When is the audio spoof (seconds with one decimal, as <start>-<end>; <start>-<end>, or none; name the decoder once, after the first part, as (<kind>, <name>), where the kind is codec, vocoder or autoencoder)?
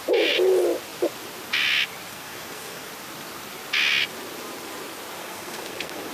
2.1-2.9 (codec, SNAC); 5.2-6.1